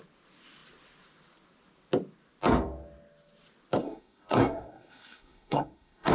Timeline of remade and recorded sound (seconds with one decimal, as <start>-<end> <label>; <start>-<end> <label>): 0.0-3.8 recorded; 3.8-6.1 remade